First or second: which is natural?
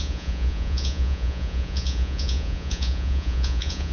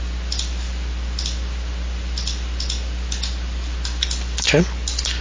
second